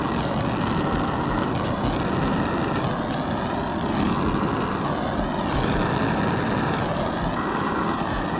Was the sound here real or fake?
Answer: real